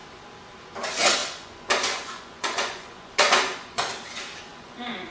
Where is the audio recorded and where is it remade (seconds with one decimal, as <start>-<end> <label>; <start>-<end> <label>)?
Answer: 0.0-1.2 recorded; 1.2-3.9 remade; 3.9-4.5 recorded; 4.5-5.1 remade

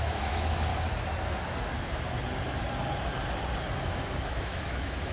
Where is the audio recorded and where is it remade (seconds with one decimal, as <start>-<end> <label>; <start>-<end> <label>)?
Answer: 0.0-0.7 remade; 0.7-3.8 recorded; 3.8-5.1 remade

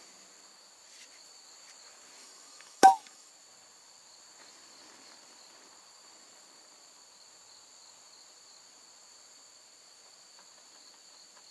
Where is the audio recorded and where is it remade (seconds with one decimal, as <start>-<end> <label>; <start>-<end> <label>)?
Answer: 0.0-2.2 recorded; 2.2-3.3 remade; 3.3-11.5 recorded

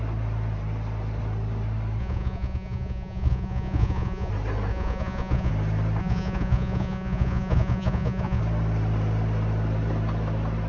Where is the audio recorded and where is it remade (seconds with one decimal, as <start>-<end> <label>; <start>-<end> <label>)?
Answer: 0.0-2.0 recorded; 2.0-4.3 remade; 4.3-4.7 recorded; 4.7-5.5 remade; 5.5-6.0 recorded; 6.0-8.4 remade; 8.4-10.7 recorded

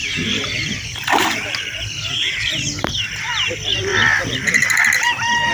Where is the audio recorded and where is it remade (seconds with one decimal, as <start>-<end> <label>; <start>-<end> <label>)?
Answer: 0.0-3.9 remade; 3.9-4.5 recorded; 4.5-5.5 remade